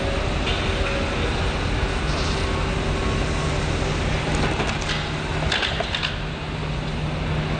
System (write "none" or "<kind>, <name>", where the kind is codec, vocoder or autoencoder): none